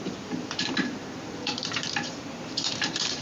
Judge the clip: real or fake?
fake